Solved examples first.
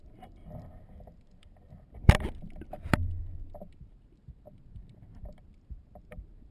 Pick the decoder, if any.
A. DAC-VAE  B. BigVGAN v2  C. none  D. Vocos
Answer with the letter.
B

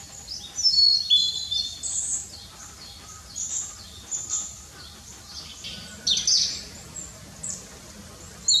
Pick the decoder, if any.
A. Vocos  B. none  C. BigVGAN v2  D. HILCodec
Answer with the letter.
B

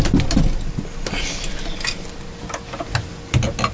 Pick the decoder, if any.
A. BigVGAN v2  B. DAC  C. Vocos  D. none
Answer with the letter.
D